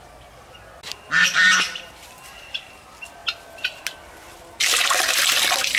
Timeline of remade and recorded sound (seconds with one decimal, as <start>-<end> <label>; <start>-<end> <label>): 0.0-1.4 recorded; 1.4-2.7 remade; 2.7-5.8 recorded